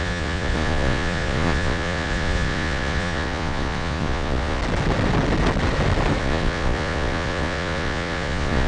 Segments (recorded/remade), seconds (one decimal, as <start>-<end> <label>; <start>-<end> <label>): 0.0-4.6 remade; 4.6-6.2 recorded; 6.2-8.7 remade